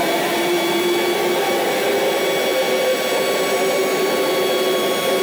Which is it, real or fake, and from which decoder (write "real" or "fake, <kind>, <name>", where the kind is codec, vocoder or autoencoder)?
real